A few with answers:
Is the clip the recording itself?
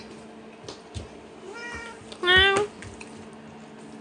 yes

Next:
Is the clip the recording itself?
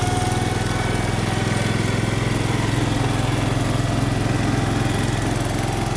yes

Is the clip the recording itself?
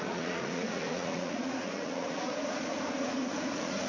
no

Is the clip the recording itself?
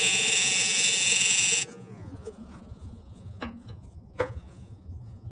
no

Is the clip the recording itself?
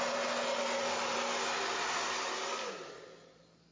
yes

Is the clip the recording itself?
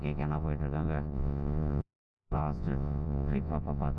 no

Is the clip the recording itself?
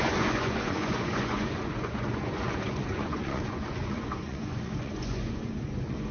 no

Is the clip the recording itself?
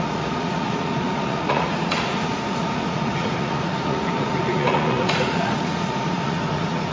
no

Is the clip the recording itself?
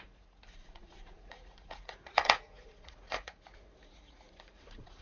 no